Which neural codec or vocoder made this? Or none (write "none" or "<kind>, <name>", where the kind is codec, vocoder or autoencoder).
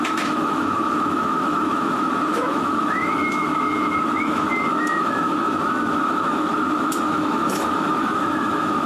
autoencoder, DAC-VAE